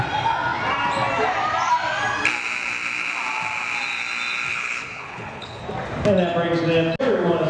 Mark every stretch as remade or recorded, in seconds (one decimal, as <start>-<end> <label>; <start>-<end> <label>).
0.0-4.5 recorded; 4.5-5.6 remade; 5.6-7.5 recorded